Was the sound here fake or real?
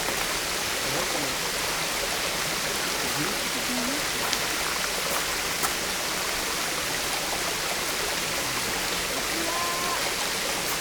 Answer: real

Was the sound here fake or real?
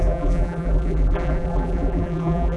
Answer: fake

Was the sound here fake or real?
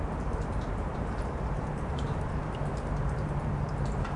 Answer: fake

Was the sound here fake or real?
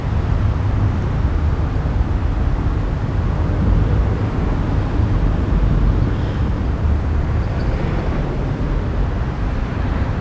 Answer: real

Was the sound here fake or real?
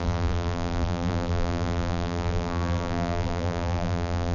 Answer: fake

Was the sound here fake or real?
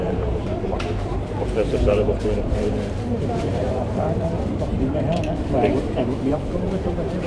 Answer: fake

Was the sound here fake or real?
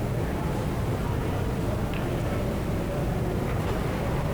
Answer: fake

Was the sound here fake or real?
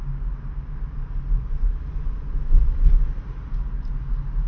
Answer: real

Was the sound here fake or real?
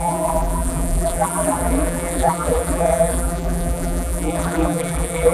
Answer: fake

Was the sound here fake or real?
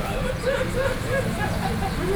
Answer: real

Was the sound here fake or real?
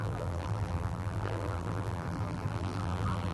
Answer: fake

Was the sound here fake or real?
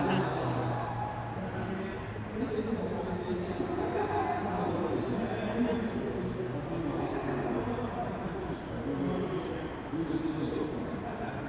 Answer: real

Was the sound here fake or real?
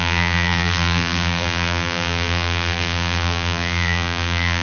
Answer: fake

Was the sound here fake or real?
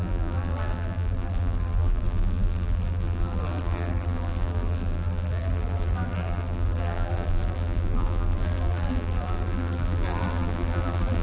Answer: fake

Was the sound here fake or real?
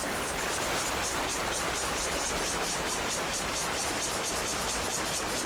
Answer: real